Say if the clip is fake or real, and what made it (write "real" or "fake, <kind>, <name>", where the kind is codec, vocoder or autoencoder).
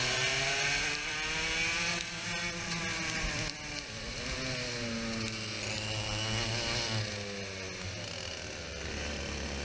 real